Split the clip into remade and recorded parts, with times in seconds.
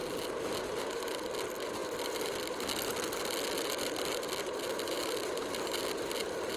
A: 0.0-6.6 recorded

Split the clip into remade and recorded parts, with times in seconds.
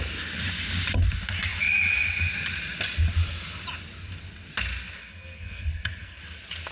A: 0.0-5.0 recorded; 5.0-6.2 remade; 6.2-6.7 recorded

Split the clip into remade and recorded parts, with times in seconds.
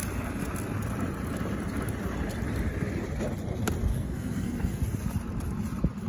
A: 0.0-3.9 recorded; 3.9-4.8 remade; 4.8-6.1 recorded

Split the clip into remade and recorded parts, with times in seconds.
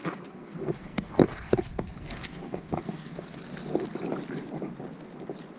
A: 0.0-3.4 remade; 3.4-5.6 recorded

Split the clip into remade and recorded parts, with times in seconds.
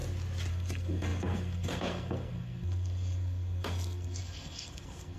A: 0.0-0.5 recorded; 0.5-5.2 remade